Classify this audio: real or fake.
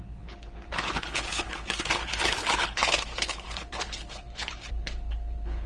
fake